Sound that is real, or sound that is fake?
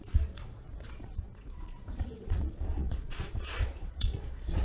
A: fake